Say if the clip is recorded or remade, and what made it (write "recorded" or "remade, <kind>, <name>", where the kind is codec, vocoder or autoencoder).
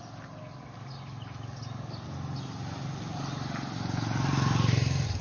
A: recorded